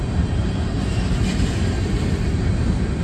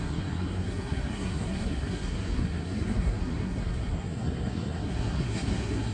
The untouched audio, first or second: first